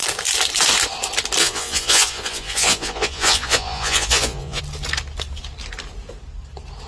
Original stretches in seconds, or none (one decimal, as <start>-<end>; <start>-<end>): 0.0-1.4; 4.6-6.9